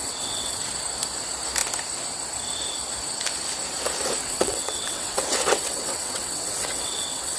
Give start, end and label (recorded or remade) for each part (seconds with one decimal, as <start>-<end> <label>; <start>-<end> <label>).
0.0-0.6 remade; 0.6-4.2 recorded; 4.2-7.4 remade